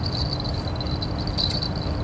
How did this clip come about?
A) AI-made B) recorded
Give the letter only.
B